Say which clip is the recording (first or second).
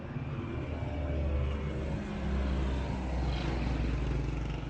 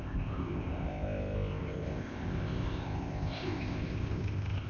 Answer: first